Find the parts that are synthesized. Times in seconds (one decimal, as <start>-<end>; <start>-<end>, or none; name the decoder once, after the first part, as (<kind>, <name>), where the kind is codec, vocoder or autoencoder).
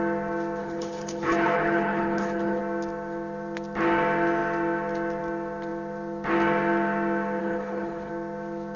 0.6-2.6 (codec, HILCodec); 7.4-8.1